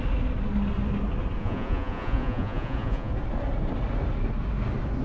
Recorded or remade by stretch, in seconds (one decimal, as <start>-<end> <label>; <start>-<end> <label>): 0.0-1.4 recorded; 1.4-3.1 remade; 3.1-5.0 recorded